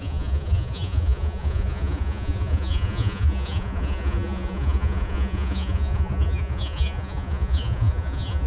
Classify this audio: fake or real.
fake